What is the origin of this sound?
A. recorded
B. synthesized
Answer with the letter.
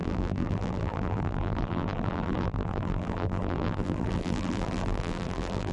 B